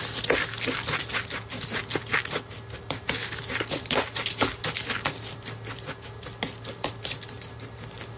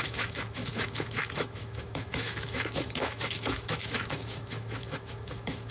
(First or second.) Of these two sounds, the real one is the first